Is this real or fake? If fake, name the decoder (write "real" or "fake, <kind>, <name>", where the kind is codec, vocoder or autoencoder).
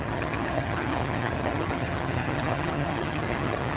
fake, vocoder, HiFi-GAN